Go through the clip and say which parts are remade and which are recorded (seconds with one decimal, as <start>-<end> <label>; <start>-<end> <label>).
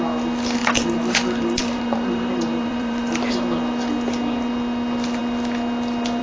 0.0-0.6 recorded; 0.6-3.3 remade; 3.3-6.2 recorded